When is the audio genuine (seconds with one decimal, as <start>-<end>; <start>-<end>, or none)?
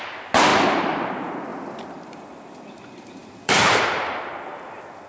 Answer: 0.0-0.5; 1.1-1.5; 2.1-3.2; 4.2-5.1